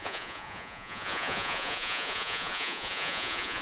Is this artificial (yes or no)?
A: yes